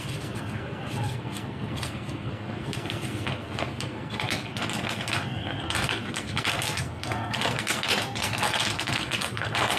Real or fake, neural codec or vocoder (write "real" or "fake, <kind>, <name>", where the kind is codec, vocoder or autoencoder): fake, codec, SNAC